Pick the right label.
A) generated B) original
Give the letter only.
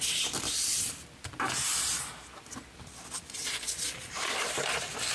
B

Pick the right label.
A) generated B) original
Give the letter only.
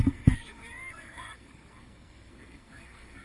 A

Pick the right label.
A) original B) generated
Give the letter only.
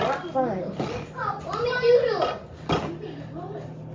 A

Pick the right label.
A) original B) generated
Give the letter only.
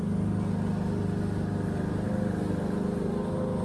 A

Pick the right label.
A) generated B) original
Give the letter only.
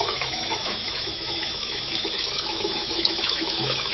A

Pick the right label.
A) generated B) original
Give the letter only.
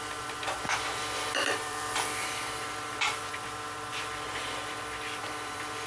A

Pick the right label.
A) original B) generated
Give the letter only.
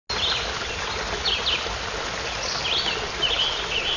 A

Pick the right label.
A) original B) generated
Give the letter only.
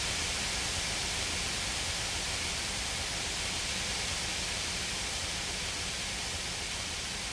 A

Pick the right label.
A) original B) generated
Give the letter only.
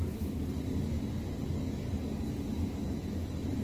A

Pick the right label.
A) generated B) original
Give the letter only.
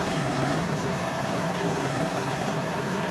A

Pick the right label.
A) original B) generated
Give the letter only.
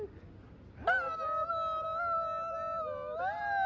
A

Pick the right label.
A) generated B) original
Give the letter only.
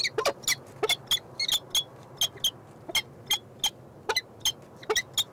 B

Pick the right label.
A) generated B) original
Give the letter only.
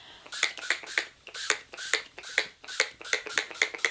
B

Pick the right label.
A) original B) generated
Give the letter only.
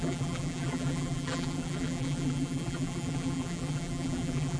B